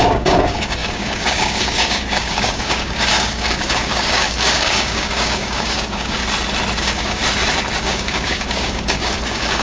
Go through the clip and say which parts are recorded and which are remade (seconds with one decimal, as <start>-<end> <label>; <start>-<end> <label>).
0.0-6.2 remade; 6.2-6.8 recorded; 6.8-7.2 remade; 7.2-7.8 recorded; 7.8-9.6 remade

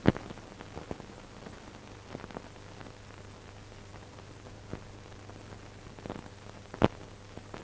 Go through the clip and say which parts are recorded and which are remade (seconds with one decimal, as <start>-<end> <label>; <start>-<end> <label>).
0.0-1.4 recorded; 1.4-2.1 remade; 2.1-3.9 recorded; 3.9-5.3 remade; 5.3-7.6 recorded

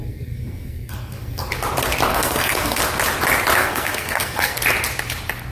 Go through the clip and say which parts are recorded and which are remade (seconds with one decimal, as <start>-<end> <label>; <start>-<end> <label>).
0.0-1.5 remade; 1.5-2.1 recorded; 2.1-2.8 remade; 2.8-3.6 recorded; 3.6-4.6 remade; 4.6-5.5 recorded